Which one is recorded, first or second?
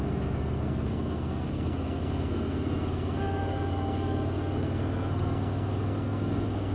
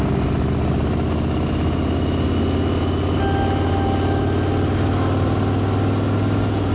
second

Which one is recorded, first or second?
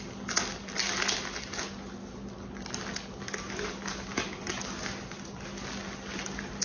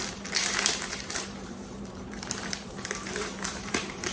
first